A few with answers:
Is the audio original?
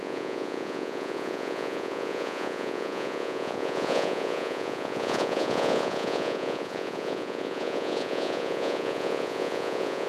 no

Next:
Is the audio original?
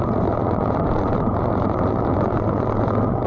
no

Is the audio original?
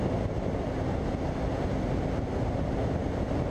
yes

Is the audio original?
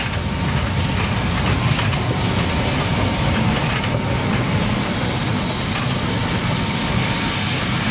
yes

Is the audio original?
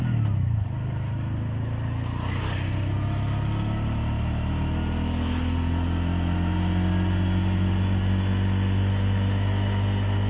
yes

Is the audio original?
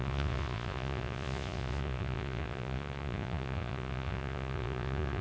no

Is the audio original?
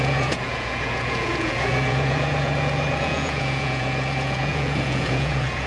no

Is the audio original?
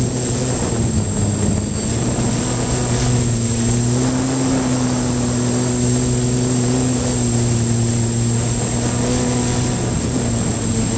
yes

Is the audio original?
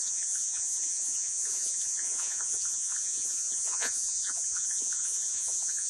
no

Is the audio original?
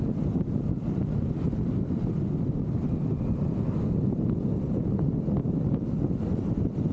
yes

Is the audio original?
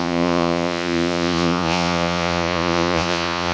no